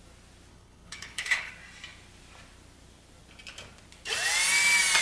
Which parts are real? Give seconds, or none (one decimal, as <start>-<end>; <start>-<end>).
0.0-0.5; 1.5-5.0